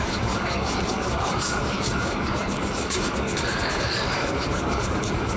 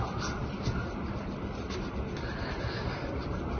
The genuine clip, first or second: second